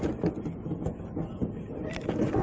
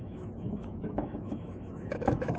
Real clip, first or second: first